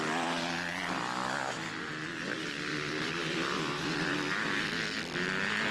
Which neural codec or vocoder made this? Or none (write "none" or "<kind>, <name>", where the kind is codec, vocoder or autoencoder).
none